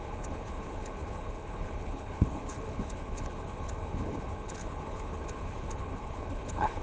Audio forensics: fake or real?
fake